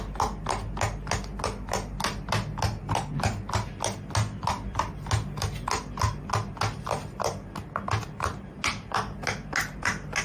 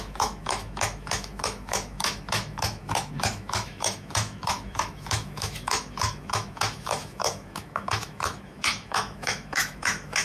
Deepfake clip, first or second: second